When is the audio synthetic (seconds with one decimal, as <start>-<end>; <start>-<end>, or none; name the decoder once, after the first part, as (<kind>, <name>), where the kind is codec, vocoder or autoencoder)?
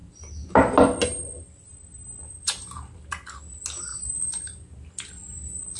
none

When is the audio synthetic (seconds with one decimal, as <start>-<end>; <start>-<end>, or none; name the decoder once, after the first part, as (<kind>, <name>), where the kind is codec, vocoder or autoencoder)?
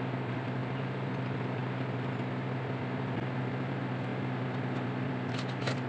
0.6-1.1 (vocoder, BigVGAN v2)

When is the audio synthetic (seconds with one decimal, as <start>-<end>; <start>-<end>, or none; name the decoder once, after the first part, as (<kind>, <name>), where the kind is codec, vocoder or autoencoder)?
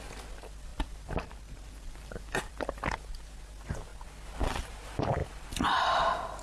0.7-2.6 (vocoder, BigVGAN v2); 5.2-5.8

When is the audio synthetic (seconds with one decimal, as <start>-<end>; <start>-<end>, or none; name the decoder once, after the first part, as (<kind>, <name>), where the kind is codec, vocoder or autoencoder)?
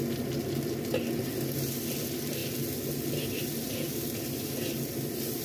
none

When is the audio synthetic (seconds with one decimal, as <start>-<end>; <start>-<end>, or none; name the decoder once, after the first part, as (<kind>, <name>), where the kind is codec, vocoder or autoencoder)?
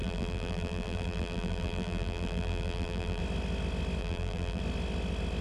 0.0-3.2 (vocoder, BigVGAN v2); 4.0-4.6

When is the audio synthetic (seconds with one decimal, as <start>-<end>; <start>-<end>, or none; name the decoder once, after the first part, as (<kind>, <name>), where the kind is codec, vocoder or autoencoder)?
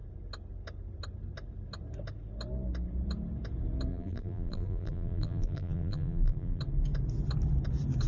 3.9-6.6 (vocoder, BigVGAN v2)